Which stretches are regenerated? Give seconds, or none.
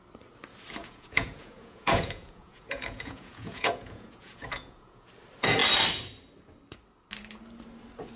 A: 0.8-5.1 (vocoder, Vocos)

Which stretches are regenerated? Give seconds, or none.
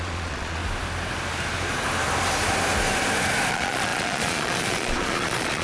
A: 0.0-0.6 (vocoder, Vocos); 3.5-5.6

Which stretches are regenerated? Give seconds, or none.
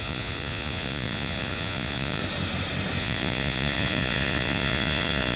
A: 0.0-2.2 (vocoder, Vocos); 3.0-5.4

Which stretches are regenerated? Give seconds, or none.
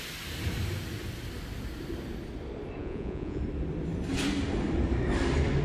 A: 2.8-3.4 (vocoder, Vocos)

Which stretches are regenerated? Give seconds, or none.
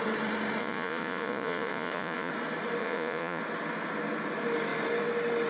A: 0.6-2.3 (vocoder, Vocos); 2.8-3.4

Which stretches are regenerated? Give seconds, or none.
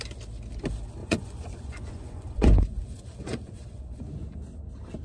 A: 1.0-4.0 (vocoder, Vocos)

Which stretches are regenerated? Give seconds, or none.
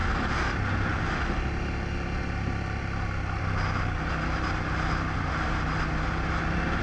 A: none